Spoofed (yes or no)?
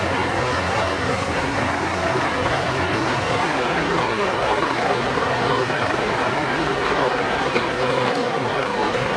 yes